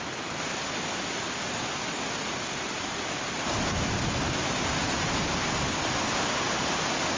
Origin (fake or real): real